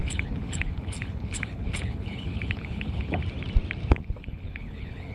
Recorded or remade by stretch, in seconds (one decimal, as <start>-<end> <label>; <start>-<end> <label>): 0.0-3.2 remade; 3.2-3.9 recorded; 3.9-5.1 remade